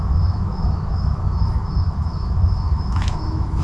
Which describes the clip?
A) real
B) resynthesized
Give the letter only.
B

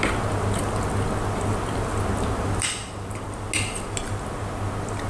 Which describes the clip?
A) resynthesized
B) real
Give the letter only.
B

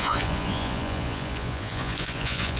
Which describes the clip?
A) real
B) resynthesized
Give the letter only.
B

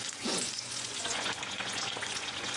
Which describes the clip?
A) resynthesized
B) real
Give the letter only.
A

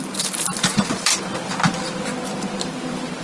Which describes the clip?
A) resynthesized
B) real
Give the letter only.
B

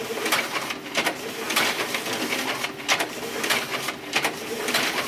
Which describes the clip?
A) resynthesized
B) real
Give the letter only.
B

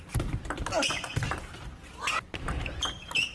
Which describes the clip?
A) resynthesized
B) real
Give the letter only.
B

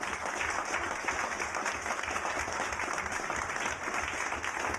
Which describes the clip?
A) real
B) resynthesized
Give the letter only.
A